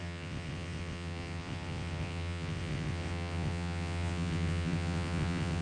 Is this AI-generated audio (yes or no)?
yes